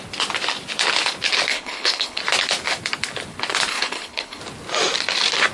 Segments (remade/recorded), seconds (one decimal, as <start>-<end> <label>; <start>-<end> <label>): 0.0-1.5 recorded; 1.5-2.2 remade; 2.2-3.7 recorded; 3.7-4.4 remade; 4.4-5.5 recorded